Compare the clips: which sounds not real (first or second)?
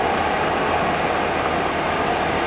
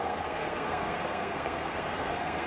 second